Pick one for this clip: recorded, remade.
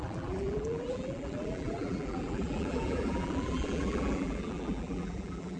remade